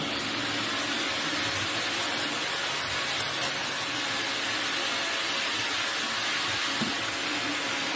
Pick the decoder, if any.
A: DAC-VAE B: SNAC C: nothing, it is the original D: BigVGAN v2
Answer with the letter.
C